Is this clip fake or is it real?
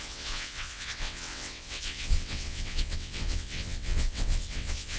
fake